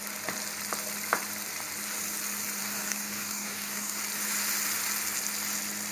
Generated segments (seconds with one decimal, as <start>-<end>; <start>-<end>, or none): 2.6-4.0